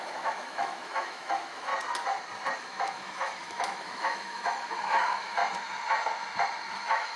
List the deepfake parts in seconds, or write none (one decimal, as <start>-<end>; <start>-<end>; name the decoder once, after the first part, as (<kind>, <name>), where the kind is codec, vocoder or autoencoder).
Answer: 0.0-1.7 (autoencoder, DAC-VAE); 2.6-5.4; 6.7-7.2